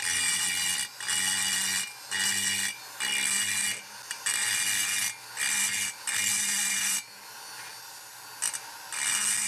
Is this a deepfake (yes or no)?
no